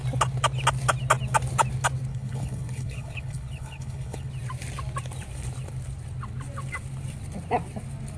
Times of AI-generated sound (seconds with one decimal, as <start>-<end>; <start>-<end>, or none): 2.1-4.3